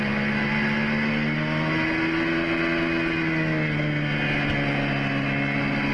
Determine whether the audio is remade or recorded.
recorded